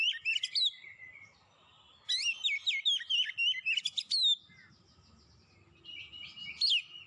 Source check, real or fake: real